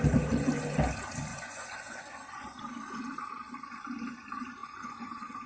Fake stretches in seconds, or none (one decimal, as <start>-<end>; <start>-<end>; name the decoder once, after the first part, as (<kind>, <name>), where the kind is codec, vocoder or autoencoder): 1.3-2.6 (vocoder, Vocos); 4.6-5.5